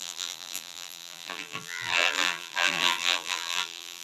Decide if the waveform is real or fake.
fake